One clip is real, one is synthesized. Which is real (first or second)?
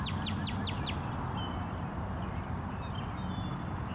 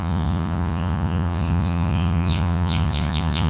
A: first